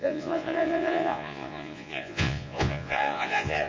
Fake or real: fake